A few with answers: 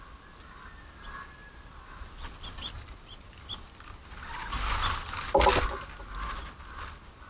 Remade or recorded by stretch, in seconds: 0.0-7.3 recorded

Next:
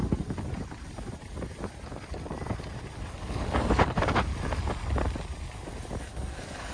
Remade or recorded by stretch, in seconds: 0.0-3.1 recorded; 3.1-4.3 remade; 4.3-6.0 recorded; 6.0-6.7 remade

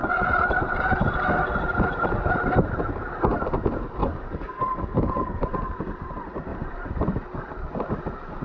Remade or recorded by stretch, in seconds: 0.0-4.0 recorded; 4.0-5.4 remade; 5.4-8.4 recorded